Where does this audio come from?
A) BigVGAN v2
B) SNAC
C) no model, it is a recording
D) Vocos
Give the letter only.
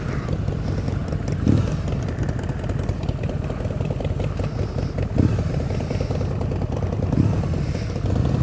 C